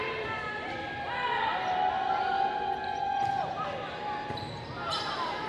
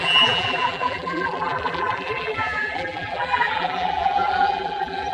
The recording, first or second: first